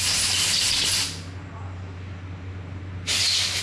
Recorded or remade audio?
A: recorded